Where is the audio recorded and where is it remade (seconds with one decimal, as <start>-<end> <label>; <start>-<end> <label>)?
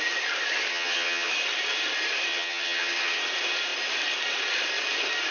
0.0-0.7 recorded; 0.7-1.3 remade; 1.3-2.3 recorded; 2.3-3.2 remade; 3.2-5.3 recorded